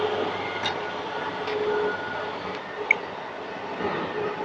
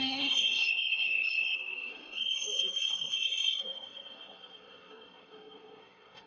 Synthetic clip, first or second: second